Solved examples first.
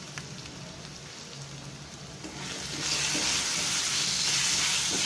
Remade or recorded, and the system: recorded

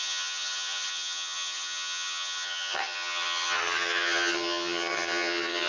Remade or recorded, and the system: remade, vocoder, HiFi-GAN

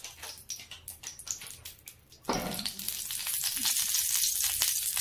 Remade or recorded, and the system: recorded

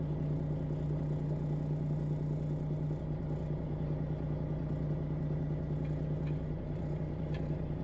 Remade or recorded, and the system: recorded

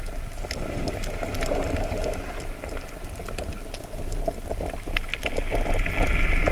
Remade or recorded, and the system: recorded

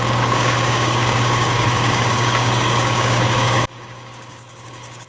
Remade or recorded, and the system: remade, codec, DAC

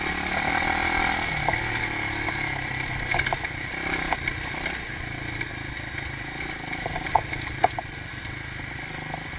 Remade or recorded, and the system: recorded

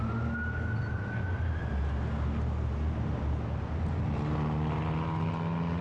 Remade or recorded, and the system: recorded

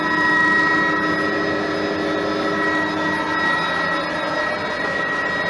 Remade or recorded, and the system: recorded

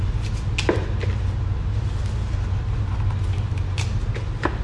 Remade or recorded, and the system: recorded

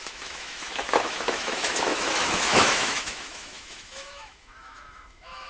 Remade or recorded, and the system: remade, autoencoder, DAC-VAE